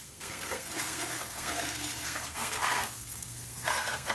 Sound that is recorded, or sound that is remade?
remade